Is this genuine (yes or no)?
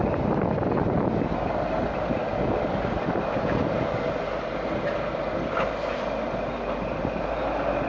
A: yes